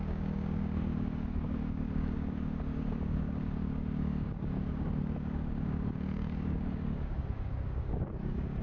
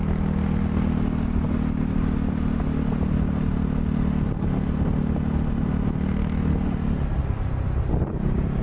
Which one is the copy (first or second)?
first